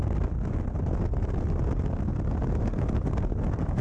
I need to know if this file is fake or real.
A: real